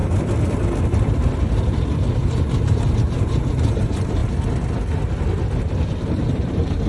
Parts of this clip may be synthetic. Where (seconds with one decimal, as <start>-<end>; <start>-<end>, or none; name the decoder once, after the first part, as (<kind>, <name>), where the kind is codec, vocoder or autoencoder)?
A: 2.1-4.2 (vocoder, BigVGAN v2); 6.3-6.9